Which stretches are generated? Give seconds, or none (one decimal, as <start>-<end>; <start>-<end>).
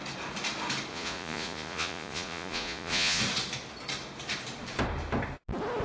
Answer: 0.9-3.2